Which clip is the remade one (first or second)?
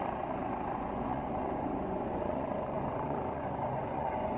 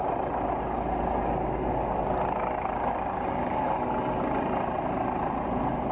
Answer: first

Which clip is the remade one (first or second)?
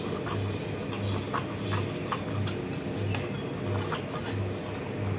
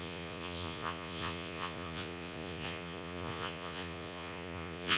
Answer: second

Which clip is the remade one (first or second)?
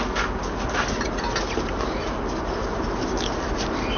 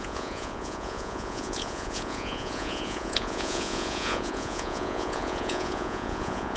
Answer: second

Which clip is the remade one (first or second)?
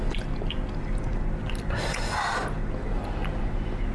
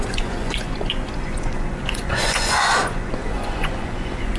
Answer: second